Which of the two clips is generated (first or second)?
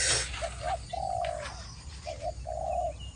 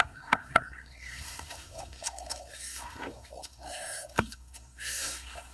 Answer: second